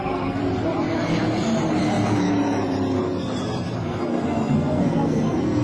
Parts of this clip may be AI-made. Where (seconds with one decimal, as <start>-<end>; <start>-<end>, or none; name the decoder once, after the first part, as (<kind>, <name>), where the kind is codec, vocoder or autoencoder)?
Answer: 0.0-0.4 (codec, SNAC); 3.8-5.6